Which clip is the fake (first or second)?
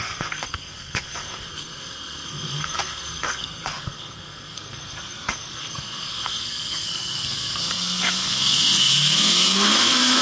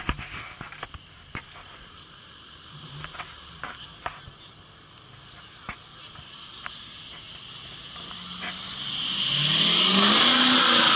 first